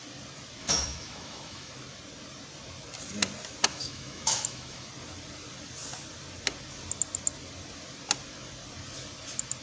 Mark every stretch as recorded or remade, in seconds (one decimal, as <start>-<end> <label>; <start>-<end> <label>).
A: 0.0-0.6 recorded; 0.6-1.7 remade; 1.7-3.7 recorded; 3.7-4.9 remade; 4.9-9.6 recorded